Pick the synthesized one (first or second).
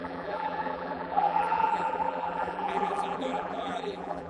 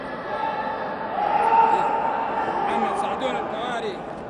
first